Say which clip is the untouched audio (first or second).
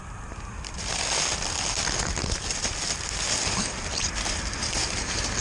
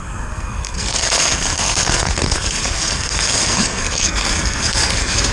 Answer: first